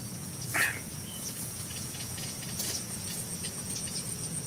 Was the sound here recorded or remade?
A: remade